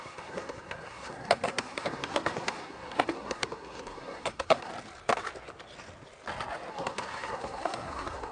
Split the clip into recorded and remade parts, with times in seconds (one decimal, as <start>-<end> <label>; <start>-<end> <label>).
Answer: 0.0-4.7 remade; 4.7-6.7 recorded; 6.7-8.3 remade